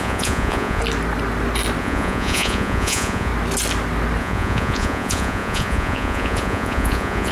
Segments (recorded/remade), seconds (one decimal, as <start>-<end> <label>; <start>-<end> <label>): 0.0-0.8 remade; 0.8-1.8 recorded; 1.8-3.3 remade; 3.3-4.2 recorded; 4.2-7.3 remade